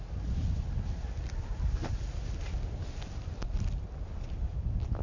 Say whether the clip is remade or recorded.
recorded